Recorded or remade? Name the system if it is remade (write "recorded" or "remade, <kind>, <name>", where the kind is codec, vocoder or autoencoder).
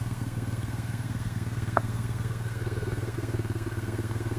remade, codec, SNAC